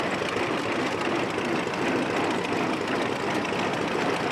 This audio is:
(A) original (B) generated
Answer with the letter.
A